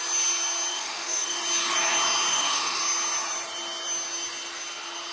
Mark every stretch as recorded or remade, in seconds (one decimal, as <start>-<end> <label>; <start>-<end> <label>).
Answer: 0.0-0.7 recorded; 0.7-1.4 remade; 1.4-2.3 recorded; 2.3-2.8 remade; 2.8-5.1 recorded